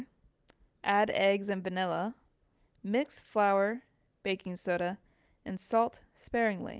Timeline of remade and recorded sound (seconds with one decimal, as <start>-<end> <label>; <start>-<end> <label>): 0.0-6.8 recorded